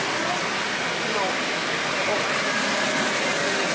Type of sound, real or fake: real